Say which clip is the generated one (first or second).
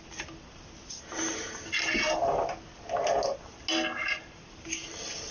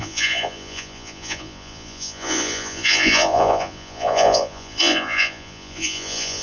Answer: second